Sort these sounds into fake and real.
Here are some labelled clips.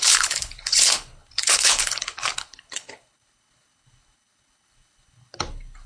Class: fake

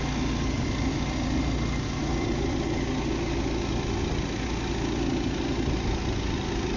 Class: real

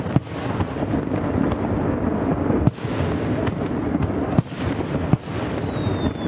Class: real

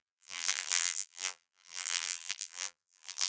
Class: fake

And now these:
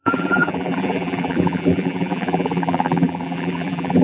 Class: fake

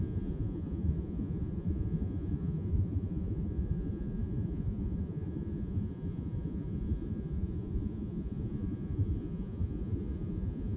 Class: fake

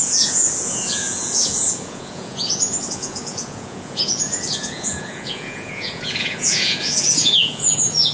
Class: fake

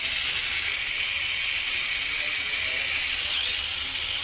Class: real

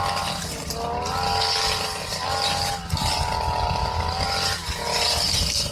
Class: real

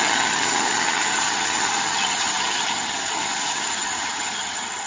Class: fake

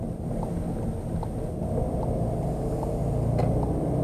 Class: real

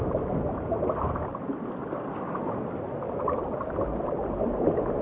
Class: real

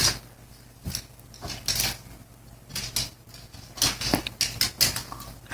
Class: real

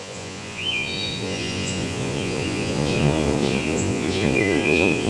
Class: fake